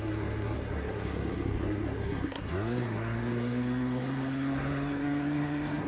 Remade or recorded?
remade